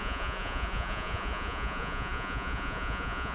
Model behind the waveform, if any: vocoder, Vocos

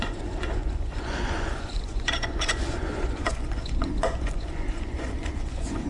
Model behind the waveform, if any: vocoder, Vocos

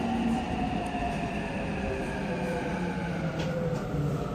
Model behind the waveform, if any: vocoder, BigVGAN v2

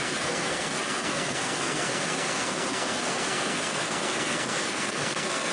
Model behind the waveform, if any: codec, SNAC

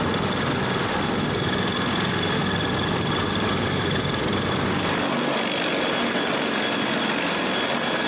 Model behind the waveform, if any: none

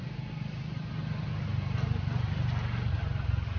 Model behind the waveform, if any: none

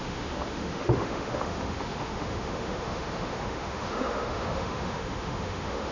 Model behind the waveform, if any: autoencoder, DAC-VAE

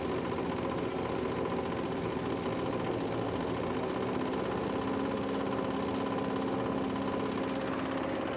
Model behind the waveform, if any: none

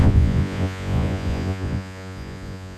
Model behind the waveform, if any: vocoder, Vocos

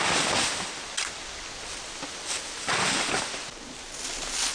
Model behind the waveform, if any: none